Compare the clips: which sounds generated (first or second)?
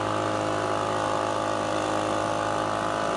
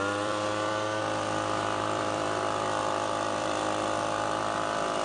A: second